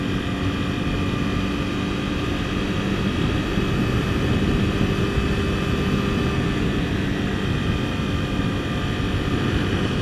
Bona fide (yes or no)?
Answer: yes